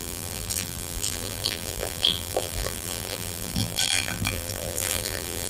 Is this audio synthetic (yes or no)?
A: yes